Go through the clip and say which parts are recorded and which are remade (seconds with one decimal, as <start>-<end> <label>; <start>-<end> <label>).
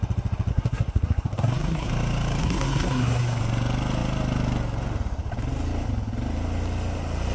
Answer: 0.0-0.5 recorded; 0.5-1.9 remade; 1.9-2.4 recorded; 2.4-3.4 remade; 3.4-7.3 recorded